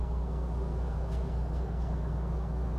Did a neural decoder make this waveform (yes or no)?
yes